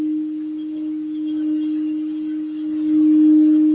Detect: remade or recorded recorded